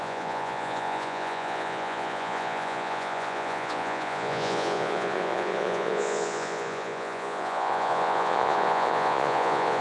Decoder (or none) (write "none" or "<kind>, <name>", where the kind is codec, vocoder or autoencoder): vocoder, Vocos